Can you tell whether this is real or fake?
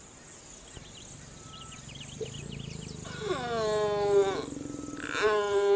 real